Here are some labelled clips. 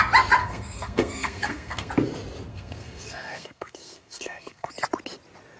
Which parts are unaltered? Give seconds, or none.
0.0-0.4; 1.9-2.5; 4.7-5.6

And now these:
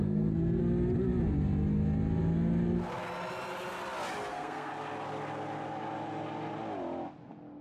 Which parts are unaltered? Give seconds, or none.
0.6-4.3; 4.7-7.6

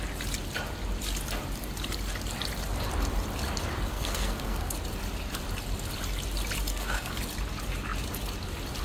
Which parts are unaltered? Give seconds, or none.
0.0-3.9; 4.7-6.7; 7.2-8.8

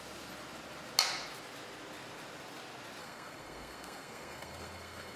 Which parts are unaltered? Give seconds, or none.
0.0-3.0